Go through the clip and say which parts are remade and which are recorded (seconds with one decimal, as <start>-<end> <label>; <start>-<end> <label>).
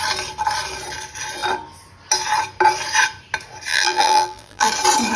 0.0-3.7 recorded; 3.7-4.7 remade; 4.7-5.2 recorded